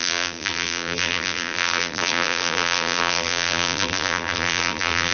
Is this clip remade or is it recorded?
remade